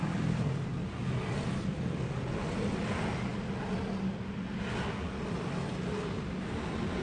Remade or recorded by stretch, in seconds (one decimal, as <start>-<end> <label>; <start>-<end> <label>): 0.0-7.0 recorded